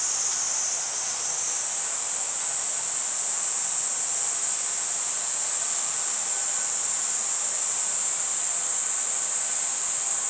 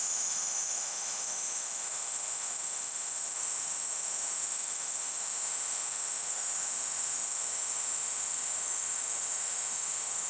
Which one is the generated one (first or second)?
second